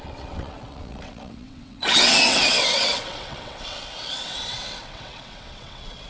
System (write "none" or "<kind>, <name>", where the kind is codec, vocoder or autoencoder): vocoder, WaveNeXt